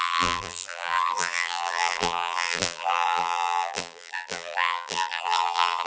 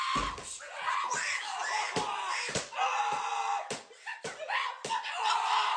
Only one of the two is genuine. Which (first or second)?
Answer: second